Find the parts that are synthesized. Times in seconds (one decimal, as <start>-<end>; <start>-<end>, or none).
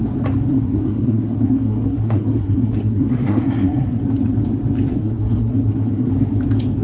0.5-4.0; 4.9-6.1